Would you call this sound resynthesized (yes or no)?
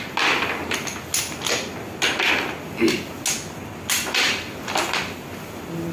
no